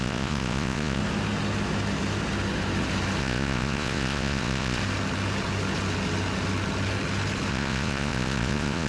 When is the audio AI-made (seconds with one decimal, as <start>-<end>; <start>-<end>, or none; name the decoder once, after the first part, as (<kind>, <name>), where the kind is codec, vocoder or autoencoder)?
0.0-1.0 (vocoder, Vocos); 3.2-4.8; 7.5-8.9